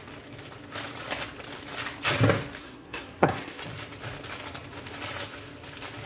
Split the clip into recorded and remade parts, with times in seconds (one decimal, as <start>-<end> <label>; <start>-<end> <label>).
0.0-2.6 recorded; 2.6-3.6 remade; 3.6-6.1 recorded